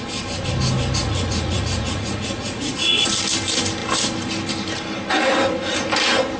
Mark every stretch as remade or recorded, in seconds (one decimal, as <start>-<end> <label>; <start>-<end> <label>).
0.0-1.0 recorded; 1.0-3.1 remade; 3.1-6.4 recorded